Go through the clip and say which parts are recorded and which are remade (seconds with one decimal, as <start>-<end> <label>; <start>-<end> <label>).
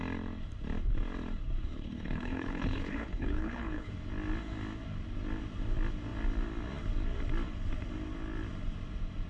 0.0-1.6 recorded; 1.6-3.9 remade; 3.9-9.3 recorded